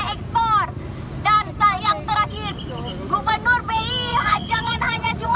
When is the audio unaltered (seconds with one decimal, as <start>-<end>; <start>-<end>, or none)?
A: 0.0-4.1